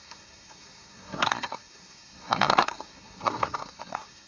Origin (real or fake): fake